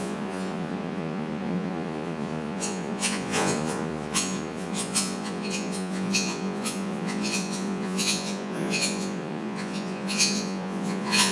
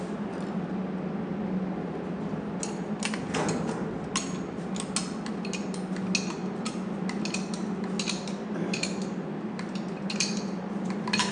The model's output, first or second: first